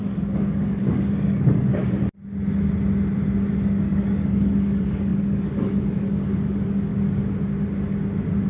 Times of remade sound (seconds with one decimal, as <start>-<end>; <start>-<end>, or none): 0.0-1.8; 3.5-6.9

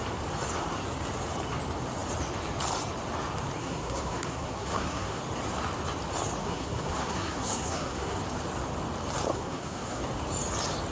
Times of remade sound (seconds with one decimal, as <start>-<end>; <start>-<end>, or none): 3.6-5.2; 6.4-8.2; 9.3-10.0

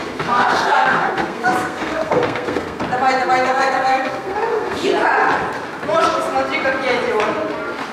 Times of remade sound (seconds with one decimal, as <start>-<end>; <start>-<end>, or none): 0.0-2.8; 3.5-4.9

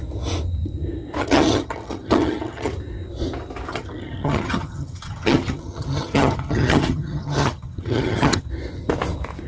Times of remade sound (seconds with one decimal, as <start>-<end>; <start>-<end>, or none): 1.2-2.7; 3.7-8.5

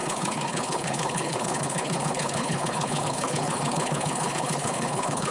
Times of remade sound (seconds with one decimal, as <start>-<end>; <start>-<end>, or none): 0.0-5.3